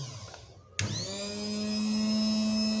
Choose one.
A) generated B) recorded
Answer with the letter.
B